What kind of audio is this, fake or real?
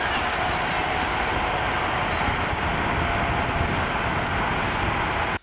real